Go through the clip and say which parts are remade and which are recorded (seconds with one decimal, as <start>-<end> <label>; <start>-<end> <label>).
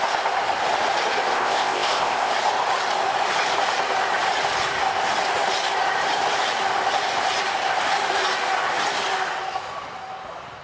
0.0-1.3 recorded; 1.3-2.3 remade; 2.3-10.6 recorded